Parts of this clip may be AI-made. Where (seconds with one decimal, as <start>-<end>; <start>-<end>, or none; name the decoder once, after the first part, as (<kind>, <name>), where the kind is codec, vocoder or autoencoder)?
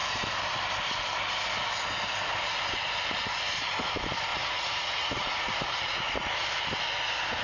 4.3-6.3 (vocoder, Vocos)